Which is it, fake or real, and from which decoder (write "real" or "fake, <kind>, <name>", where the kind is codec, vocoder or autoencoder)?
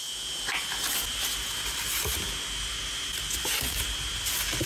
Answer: real